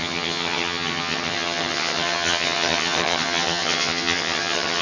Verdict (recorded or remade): remade